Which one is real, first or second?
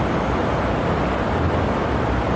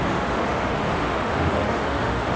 first